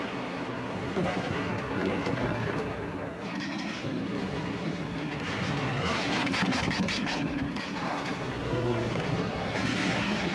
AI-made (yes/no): yes